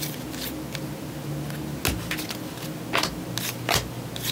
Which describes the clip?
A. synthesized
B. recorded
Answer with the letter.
B